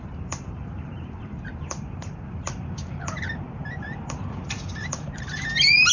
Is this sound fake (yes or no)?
yes